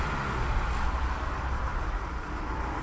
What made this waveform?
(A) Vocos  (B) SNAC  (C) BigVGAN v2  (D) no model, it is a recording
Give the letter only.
D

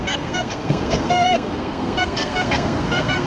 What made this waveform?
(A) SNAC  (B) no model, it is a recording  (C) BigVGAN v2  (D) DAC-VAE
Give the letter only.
A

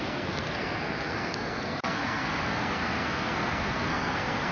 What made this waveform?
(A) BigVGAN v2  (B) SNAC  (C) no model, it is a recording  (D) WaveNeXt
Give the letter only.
B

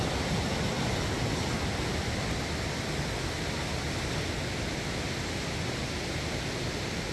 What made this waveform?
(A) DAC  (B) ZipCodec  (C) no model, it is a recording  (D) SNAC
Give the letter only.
C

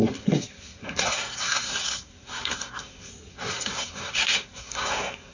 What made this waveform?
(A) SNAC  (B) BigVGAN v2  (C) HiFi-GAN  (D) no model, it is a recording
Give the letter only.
A